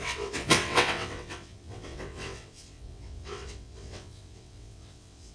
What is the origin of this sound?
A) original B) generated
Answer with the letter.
B